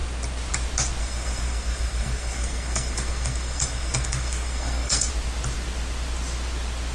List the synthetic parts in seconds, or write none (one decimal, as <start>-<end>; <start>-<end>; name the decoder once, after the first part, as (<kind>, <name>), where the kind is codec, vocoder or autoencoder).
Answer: 1.0-5.1 (codec, SNAC)